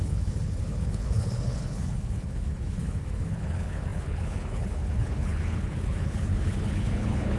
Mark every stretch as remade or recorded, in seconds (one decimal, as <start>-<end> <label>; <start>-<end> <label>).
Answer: 0.0-7.4 remade